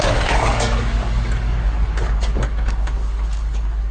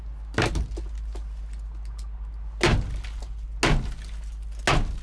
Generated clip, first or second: first